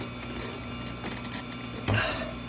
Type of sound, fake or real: real